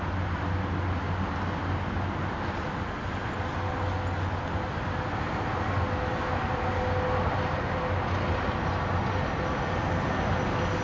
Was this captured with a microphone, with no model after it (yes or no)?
yes